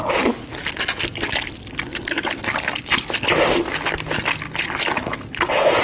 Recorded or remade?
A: recorded